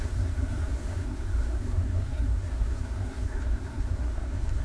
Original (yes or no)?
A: no